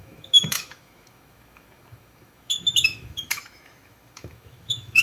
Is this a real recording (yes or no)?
no